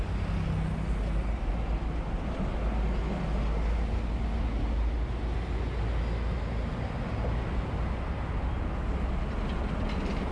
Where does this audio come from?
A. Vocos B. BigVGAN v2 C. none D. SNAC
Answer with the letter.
C